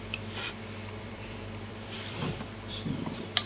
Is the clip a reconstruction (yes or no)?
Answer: yes